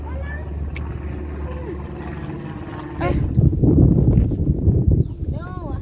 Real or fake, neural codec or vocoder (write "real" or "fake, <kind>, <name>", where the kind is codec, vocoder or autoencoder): real